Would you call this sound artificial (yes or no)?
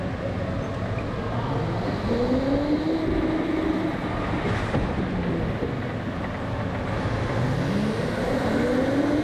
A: no